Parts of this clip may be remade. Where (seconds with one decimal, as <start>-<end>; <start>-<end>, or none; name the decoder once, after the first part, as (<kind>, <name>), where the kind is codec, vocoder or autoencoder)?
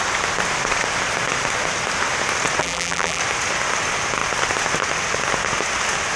2.6-3.2 (vocoder, BigVGAN v2)